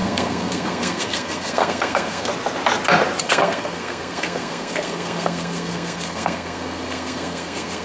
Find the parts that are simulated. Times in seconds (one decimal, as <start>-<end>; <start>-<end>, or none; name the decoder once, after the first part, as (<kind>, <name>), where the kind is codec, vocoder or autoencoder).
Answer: 0.0-2.3 (codec, SNAC); 3.2-7.8